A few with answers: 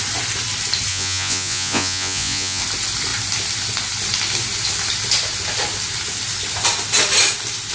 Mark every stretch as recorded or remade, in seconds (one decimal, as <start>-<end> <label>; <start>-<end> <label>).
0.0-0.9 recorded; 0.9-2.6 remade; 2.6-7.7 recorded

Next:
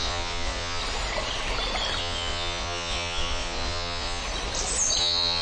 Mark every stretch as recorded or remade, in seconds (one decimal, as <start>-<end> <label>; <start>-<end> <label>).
0.0-0.8 remade; 0.8-2.0 recorded; 2.0-4.2 remade; 4.2-5.0 recorded; 5.0-5.4 remade

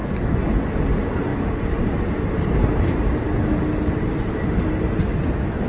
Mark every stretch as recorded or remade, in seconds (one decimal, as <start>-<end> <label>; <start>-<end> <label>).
0.0-5.7 recorded